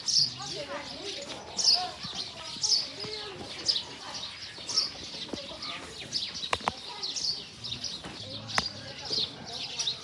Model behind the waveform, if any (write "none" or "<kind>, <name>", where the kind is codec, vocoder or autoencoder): none